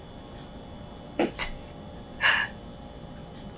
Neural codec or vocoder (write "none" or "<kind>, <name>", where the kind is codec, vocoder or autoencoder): none